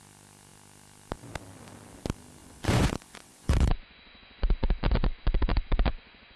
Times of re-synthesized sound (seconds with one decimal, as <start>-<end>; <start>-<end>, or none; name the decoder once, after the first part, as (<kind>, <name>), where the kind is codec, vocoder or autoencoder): 2.4-6.4 (vocoder, Vocos)